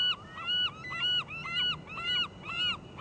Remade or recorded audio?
recorded